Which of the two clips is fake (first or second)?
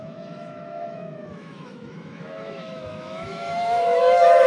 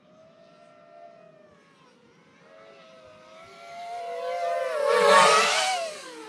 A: first